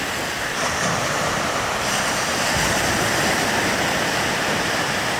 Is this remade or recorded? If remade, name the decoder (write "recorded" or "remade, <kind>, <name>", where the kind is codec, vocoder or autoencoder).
recorded